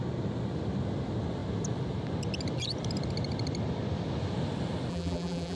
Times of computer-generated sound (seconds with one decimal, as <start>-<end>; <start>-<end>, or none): 4.9-5.6